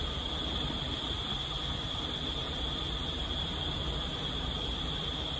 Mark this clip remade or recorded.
recorded